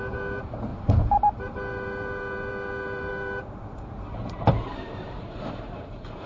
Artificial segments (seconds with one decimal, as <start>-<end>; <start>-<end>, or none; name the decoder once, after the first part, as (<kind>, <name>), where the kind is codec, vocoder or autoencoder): 0.0-6.3 (vocoder, BigVGAN v2)